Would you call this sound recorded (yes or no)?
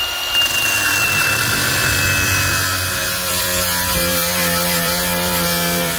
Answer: no